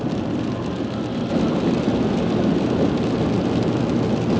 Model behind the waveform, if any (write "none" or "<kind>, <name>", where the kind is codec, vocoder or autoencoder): none